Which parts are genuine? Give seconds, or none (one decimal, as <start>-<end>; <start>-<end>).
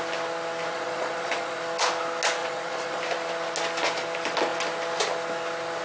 0.0-0.7; 1.6-2.4; 3.0-5.8